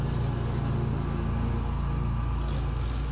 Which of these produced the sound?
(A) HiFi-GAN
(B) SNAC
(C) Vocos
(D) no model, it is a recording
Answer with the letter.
D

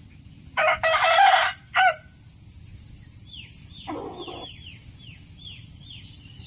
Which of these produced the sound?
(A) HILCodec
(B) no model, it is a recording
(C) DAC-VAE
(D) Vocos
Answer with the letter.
B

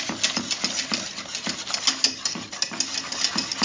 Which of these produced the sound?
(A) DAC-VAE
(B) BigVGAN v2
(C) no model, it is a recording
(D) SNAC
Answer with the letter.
C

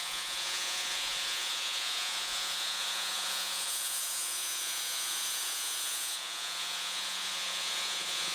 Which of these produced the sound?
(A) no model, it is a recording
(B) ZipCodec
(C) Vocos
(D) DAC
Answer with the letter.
C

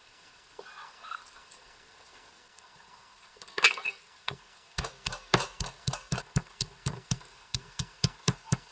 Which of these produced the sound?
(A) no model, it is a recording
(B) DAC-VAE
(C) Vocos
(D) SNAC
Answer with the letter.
D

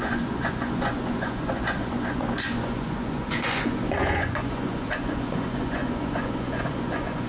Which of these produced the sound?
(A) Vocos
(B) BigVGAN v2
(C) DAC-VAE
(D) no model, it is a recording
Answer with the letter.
A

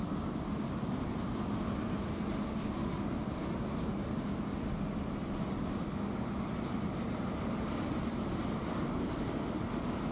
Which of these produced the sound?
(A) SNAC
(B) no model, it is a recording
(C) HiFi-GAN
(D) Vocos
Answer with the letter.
B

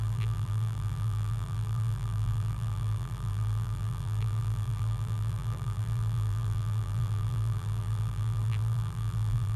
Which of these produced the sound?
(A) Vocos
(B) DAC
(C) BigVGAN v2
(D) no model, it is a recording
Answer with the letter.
C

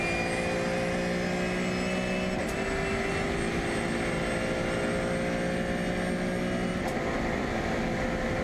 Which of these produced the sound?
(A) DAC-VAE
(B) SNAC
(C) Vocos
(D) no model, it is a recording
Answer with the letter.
D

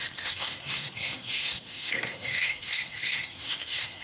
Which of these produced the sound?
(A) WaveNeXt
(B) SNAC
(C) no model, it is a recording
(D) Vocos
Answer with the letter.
B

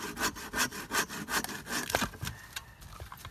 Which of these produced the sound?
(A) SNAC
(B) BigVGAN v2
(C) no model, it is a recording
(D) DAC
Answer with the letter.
C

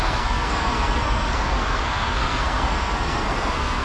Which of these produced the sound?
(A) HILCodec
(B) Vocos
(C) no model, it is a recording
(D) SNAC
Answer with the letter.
D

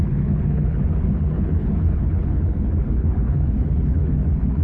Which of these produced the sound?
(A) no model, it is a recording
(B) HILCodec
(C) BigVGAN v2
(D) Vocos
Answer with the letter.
B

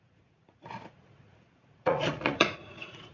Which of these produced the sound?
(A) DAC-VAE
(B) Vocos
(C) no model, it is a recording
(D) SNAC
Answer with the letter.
B